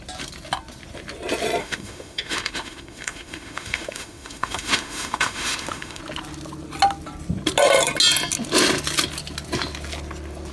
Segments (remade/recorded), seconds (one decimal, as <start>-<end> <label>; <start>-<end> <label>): 0.0-1.6 recorded; 1.6-6.0 remade; 6.0-10.5 recorded